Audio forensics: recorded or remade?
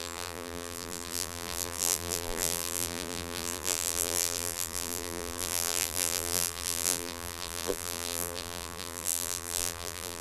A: remade